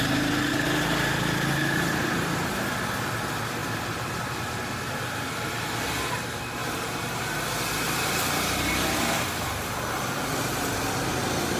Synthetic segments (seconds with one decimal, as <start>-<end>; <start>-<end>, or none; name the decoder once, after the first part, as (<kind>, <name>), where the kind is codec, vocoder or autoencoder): 3.6-4.3 (vocoder, BigVGAN v2); 6.6-7.2